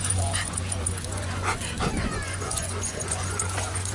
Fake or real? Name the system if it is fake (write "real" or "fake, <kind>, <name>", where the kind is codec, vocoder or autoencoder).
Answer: fake, vocoder, Vocos